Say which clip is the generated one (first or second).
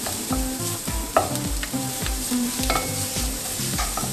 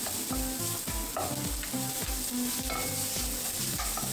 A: first